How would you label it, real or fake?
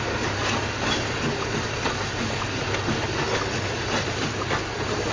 real